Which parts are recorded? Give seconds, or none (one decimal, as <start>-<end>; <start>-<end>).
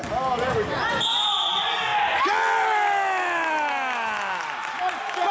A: 0.0-5.3